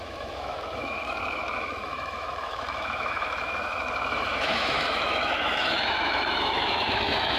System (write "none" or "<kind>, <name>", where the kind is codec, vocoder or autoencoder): autoencoder, DAC-VAE